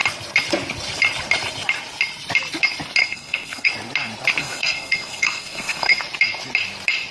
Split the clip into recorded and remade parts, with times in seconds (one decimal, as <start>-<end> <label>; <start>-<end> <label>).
0.0-3.0 recorded; 3.0-3.7 remade; 3.7-4.4 recorded; 4.4-6.0 remade; 6.0-7.1 recorded